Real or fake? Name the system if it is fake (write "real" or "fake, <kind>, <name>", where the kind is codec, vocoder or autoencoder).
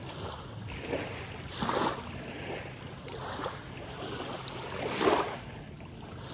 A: real